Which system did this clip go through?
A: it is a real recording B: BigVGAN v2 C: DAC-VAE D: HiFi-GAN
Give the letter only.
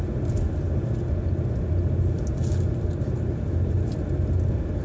A